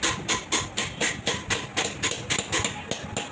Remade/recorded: recorded